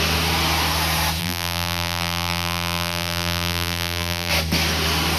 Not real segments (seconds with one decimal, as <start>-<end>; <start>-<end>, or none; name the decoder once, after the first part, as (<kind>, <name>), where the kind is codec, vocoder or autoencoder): 1.2-4.3 (vocoder, BigVGAN v2)